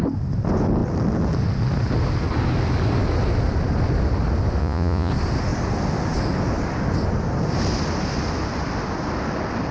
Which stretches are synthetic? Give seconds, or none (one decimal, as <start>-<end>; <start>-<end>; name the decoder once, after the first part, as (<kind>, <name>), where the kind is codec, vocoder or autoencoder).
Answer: 4.6-5.1 (vocoder, Vocos)